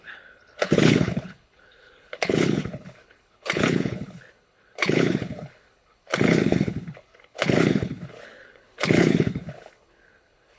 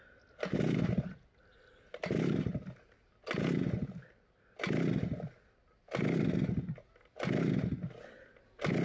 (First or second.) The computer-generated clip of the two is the first